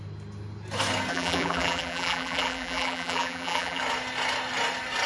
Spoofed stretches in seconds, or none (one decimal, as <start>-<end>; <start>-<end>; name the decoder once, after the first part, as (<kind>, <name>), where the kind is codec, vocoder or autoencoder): 1.1-3.8 (vocoder, BigVGAN v2)